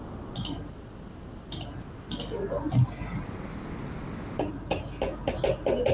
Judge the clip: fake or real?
real